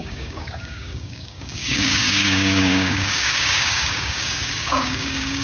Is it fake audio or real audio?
fake